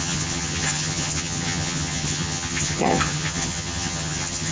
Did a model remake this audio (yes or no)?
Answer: yes